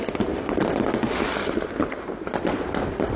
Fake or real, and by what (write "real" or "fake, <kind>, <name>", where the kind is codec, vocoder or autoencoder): real